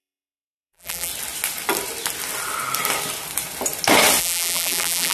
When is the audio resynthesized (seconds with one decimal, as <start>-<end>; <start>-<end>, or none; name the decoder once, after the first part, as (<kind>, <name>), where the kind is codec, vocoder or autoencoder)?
0.0-1.1 (vocoder, BigVGAN v2); 4.2-5.1